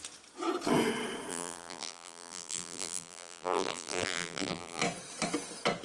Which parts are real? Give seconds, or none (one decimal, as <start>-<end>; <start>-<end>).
0.0-1.3; 4.8-5.8